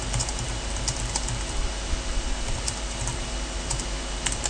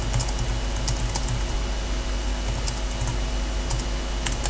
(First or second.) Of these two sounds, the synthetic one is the first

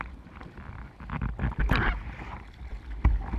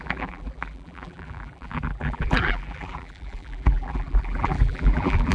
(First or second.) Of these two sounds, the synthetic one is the second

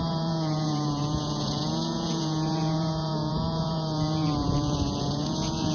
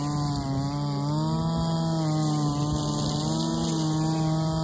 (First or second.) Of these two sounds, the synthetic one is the first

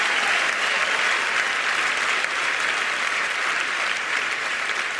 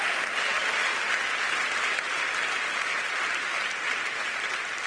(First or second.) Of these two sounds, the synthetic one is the first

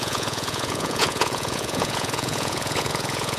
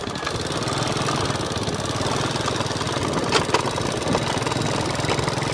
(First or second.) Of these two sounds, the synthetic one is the first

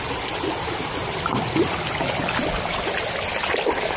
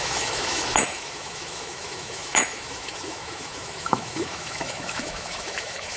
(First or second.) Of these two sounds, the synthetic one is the second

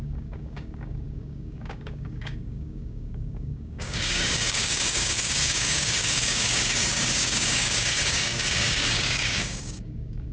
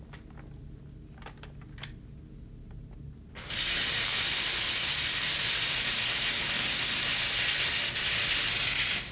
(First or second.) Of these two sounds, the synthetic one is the first